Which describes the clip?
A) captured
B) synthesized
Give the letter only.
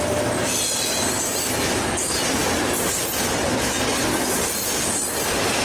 A